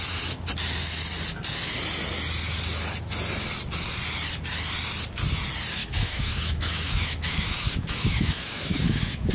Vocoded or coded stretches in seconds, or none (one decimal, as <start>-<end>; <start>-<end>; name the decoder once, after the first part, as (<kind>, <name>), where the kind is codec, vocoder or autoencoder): 5.8-9.3 (autoencoder, DAC-VAE)